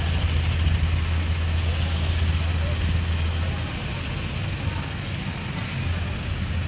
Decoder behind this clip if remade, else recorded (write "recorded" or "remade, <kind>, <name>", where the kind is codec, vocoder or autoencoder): recorded